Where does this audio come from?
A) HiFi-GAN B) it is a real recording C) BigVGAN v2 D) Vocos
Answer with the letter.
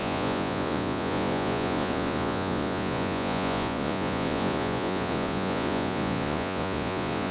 D